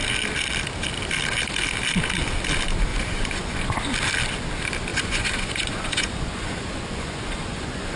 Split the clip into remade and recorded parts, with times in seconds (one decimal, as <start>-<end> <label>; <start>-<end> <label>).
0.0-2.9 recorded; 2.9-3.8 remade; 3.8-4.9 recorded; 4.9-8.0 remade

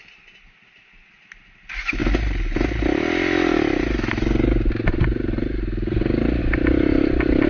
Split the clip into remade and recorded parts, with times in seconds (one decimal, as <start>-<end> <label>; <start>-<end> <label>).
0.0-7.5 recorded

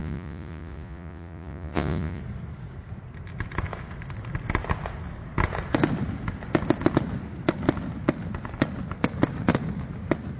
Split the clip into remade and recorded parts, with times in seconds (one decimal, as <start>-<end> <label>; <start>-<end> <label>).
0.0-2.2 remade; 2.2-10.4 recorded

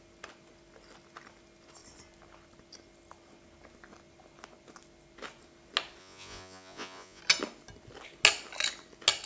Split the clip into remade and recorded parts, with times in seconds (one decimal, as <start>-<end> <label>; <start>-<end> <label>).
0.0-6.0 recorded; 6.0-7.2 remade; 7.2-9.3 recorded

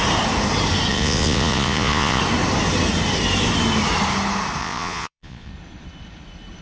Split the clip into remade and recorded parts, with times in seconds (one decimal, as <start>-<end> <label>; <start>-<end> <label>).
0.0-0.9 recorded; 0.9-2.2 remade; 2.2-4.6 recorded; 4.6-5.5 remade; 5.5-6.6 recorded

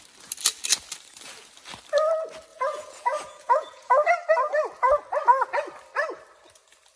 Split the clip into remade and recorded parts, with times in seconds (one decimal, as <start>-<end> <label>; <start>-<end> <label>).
0.0-2.5 recorded; 2.5-3.9 remade; 3.9-7.0 recorded

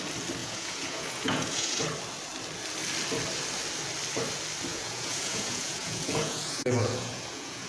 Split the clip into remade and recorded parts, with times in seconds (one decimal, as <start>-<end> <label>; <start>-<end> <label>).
0.0-0.4 recorded; 0.4-1.8 remade; 1.8-4.7 recorded; 4.7-7.7 remade

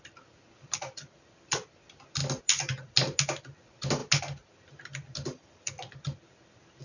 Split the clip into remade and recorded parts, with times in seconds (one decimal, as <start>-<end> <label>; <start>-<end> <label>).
0.0-6.8 recorded